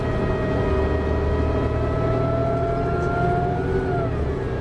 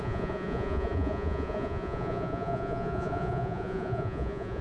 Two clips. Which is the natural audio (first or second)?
first